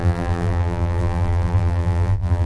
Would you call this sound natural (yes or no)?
no